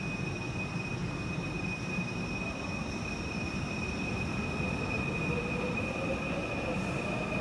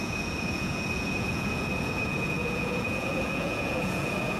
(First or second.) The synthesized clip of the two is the second